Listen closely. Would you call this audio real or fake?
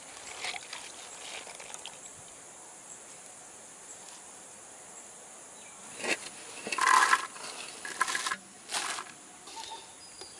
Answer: real